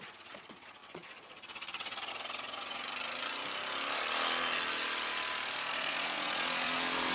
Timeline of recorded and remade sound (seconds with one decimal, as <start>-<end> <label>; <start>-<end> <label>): 0.0-2.8 remade; 2.8-5.7 recorded; 5.7-7.1 remade